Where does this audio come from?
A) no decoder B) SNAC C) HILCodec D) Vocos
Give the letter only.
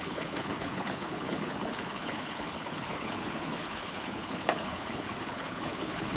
C